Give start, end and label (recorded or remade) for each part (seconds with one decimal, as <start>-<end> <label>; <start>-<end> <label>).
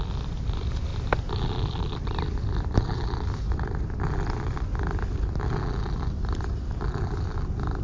0.0-7.8 recorded